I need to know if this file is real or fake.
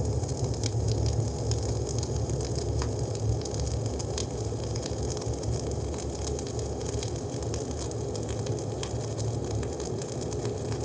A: real